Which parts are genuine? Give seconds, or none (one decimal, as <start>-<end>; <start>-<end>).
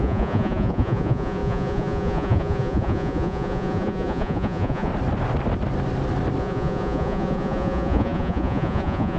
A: 4.9-6.4